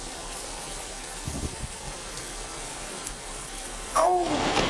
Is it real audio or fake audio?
fake